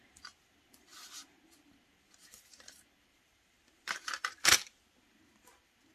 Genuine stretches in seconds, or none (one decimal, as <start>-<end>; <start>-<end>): 0.0-5.9